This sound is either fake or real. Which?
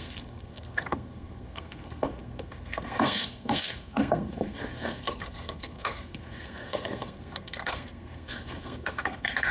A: fake